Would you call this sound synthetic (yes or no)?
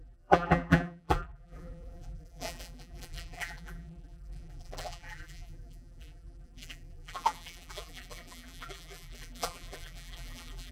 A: yes